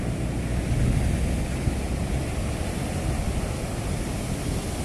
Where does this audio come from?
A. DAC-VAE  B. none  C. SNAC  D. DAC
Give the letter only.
B